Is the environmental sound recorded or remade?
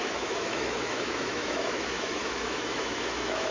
remade